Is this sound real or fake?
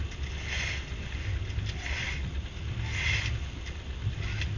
real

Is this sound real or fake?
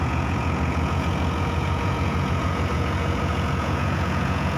fake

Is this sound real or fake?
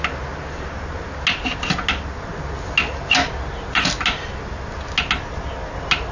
real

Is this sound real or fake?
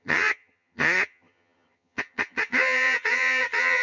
fake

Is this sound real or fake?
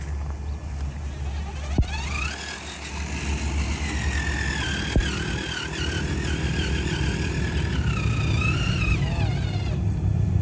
real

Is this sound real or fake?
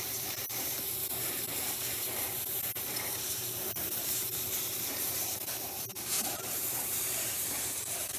fake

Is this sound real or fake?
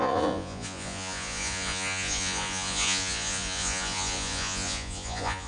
fake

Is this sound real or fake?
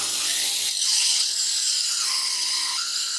real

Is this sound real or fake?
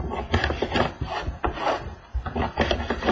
real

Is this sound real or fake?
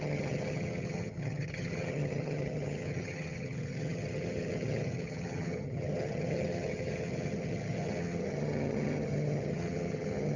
fake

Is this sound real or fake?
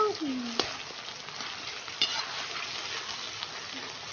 real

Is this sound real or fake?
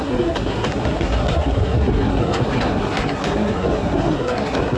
fake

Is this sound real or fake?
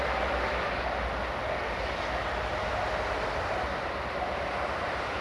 real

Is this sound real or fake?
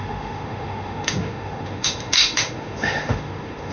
fake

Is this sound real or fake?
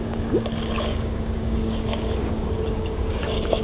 fake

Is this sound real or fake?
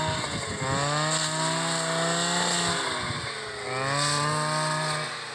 real